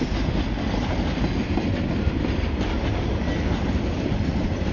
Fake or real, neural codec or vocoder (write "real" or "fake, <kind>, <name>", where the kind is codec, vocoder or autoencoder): real